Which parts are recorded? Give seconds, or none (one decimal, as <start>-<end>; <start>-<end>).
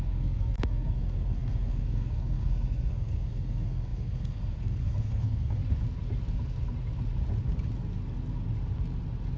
5.6-9.4